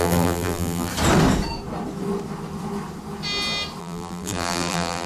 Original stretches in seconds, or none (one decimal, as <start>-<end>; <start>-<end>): 0.9-3.8